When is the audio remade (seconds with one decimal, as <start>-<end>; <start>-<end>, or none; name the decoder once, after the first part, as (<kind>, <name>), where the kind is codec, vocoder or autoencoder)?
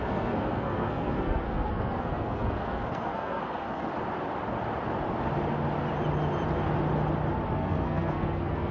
0.0-3.9 (codec, SNAC); 7.5-8.7